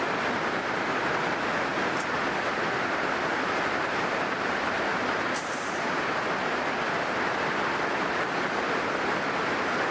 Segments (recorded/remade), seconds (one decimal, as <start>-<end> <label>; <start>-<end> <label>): 0.0-9.9 recorded